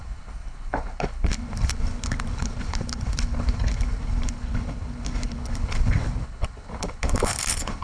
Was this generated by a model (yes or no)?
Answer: yes